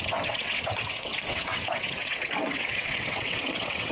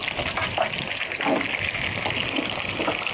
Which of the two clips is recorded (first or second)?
second